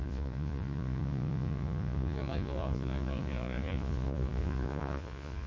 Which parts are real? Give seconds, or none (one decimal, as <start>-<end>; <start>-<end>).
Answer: none